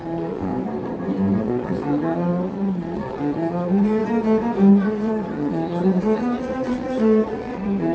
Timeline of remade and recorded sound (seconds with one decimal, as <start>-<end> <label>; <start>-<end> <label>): 0.0-0.5 remade; 0.5-1.4 recorded; 1.4-4.0 remade; 4.0-4.7 recorded; 4.7-7.9 remade